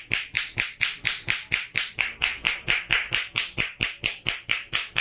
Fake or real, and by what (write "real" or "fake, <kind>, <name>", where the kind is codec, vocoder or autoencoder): real